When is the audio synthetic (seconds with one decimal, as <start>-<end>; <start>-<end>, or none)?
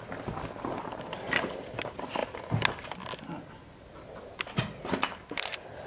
none